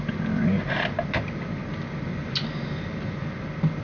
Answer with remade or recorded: recorded